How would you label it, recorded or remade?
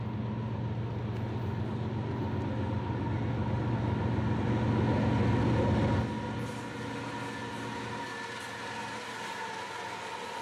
recorded